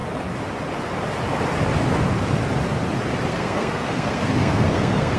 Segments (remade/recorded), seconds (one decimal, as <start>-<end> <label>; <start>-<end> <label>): 0.0-3.3 recorded; 3.3-5.2 remade